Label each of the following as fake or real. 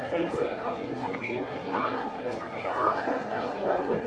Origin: fake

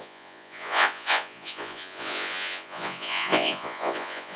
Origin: fake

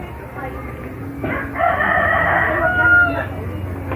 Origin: real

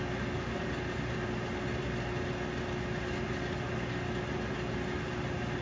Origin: real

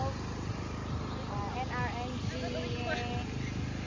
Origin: real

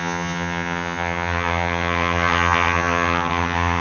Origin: fake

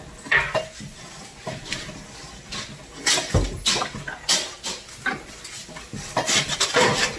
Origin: real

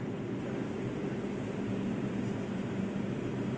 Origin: fake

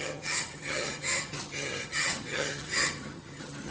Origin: fake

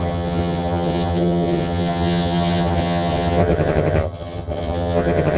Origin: fake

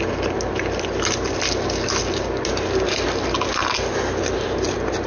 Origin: real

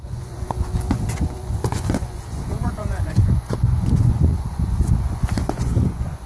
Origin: fake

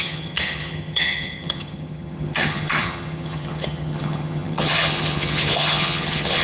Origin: fake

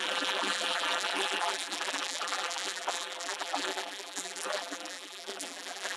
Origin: fake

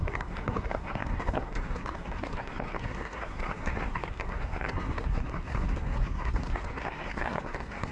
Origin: fake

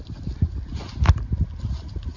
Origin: real